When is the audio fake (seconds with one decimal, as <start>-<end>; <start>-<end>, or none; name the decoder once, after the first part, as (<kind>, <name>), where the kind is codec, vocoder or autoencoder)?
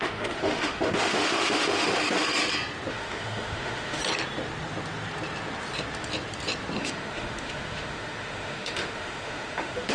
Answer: 0.0-1.9 (autoencoder, DAC-VAE); 2.9-4.0; 6.8-9.9